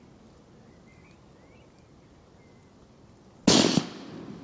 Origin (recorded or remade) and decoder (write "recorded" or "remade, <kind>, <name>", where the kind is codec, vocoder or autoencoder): recorded